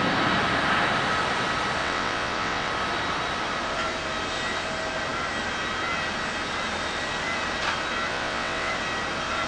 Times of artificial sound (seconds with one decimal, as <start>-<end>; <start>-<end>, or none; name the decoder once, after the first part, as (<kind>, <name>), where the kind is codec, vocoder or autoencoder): 1.8-2.7 (vocoder, WaveNeXt); 8.1-8.7